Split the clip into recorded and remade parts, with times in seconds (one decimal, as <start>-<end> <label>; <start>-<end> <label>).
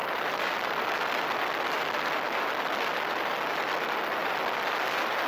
0.0-5.3 recorded